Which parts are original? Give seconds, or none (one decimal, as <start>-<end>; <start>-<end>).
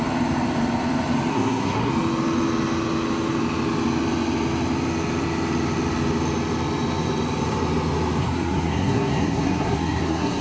0.0-1.3; 1.9-8.2